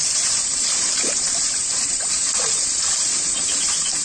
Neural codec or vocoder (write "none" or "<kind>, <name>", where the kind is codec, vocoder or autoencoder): vocoder, BigVGAN v2